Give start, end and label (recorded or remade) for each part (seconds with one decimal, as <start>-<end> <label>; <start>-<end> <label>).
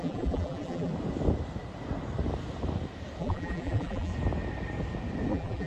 0.0-0.9 remade; 0.9-3.2 recorded; 3.2-4.1 remade; 4.1-5.3 recorded; 5.3-5.7 remade